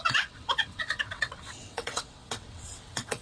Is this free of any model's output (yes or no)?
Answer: no